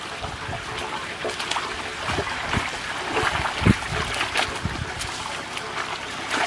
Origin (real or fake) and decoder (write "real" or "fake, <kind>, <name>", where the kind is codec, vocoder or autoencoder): real